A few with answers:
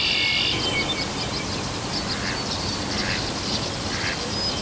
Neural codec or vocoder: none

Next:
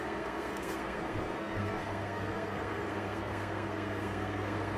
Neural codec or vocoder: codec, SNAC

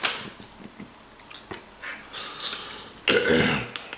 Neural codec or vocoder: none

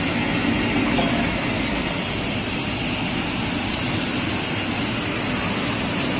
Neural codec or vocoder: none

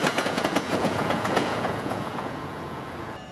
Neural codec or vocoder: vocoder, Vocos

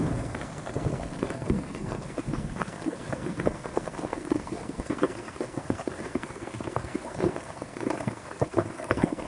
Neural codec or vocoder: codec, SNAC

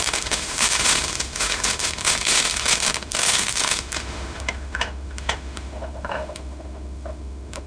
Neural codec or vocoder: autoencoder, DAC-VAE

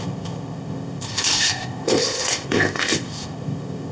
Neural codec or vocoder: codec, ZipCodec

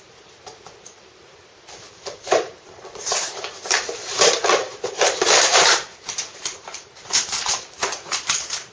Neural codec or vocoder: vocoder, BigVGAN v2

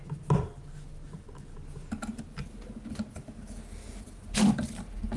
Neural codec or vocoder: none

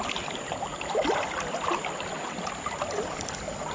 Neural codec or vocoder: none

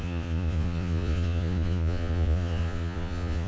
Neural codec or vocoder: vocoder, Vocos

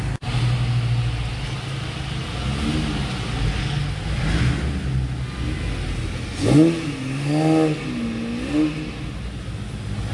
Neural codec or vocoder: none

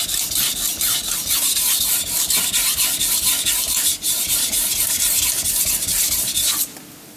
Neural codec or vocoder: none